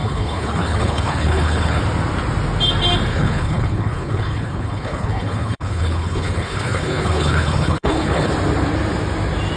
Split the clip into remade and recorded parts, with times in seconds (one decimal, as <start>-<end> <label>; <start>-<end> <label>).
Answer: 0.0-1.8 remade; 1.8-3.1 recorded; 3.1-8.3 remade; 8.3-9.6 recorded